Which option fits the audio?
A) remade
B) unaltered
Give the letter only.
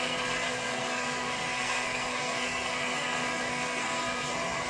A